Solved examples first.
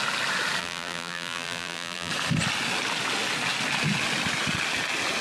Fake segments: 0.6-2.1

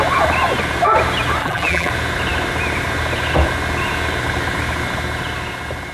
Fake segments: 1.4-1.9

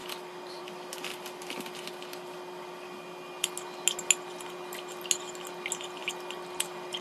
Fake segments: none